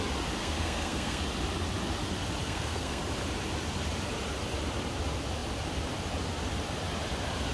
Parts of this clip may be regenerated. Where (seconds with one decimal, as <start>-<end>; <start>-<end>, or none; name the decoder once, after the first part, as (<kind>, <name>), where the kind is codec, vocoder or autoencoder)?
0.4-1.2 (codec, SNAC); 2.4-3.0